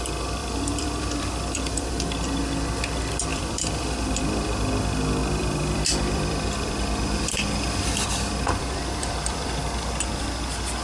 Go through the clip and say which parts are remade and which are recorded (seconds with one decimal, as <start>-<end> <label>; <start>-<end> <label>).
0.0-0.4 recorded; 0.4-1.9 remade; 1.9-3.3 recorded; 3.3-4.2 remade; 4.2-5.2 recorded; 5.2-9.9 remade; 9.9-10.8 recorded